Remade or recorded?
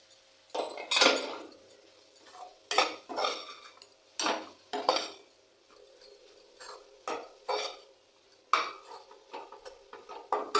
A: recorded